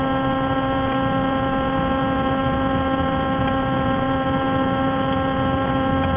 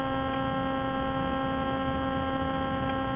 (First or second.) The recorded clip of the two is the second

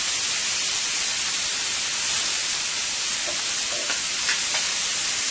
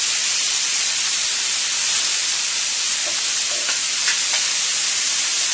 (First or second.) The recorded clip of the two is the first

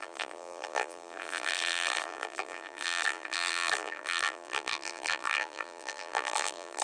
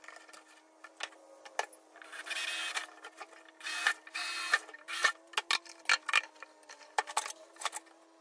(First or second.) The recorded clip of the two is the second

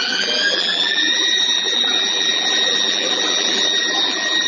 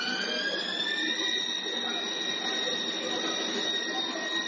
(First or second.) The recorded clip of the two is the second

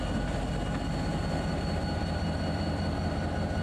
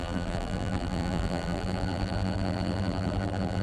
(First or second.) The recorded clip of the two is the first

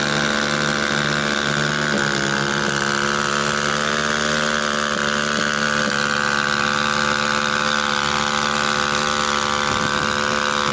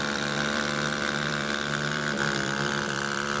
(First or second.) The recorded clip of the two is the first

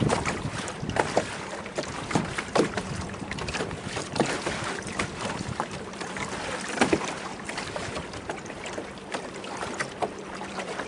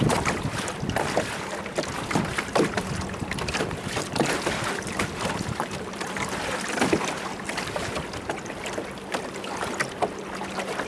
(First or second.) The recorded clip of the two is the second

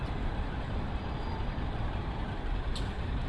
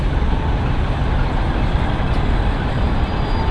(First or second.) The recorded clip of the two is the second